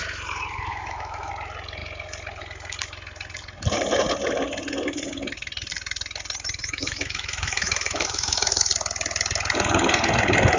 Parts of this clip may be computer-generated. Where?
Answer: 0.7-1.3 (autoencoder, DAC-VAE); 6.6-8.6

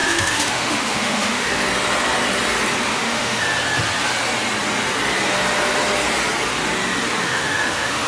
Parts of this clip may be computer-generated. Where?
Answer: 0.0-1.5 (autoencoder, DAC-VAE); 2.9-3.4; 7.2-8.1

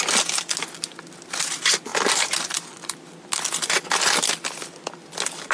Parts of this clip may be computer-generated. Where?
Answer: none

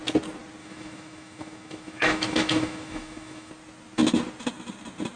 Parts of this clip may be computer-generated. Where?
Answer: 0.6-3.5 (autoencoder, DAC-VAE)

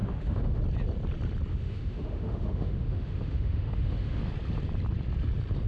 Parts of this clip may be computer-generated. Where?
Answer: 0.0-0.6 (autoencoder, DAC-VAE); 1.5-4.2

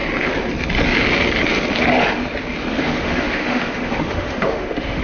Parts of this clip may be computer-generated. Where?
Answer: 2.7-5.0 (autoencoder, DAC-VAE)

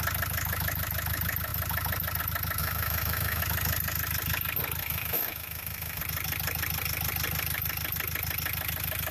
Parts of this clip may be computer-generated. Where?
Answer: 2.6-3.4 (autoencoder, DAC-VAE); 4.8-6.0

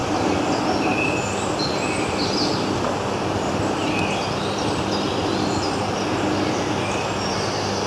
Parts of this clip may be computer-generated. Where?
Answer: none